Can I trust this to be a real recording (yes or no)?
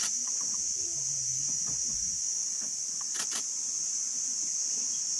yes